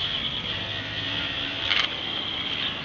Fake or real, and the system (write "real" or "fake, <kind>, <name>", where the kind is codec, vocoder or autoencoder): real